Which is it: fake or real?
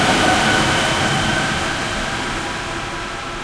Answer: real